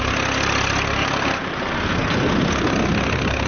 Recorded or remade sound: recorded